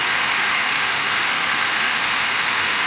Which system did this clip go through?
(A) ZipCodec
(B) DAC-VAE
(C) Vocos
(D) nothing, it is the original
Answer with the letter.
B